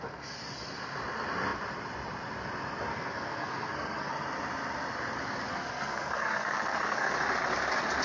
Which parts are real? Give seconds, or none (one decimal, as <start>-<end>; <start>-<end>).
0.0-2.9; 4.1-5.5; 7.1-8.0